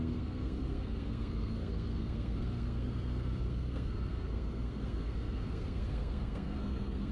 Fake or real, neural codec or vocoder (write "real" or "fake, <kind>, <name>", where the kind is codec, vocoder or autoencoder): fake, codec, SNAC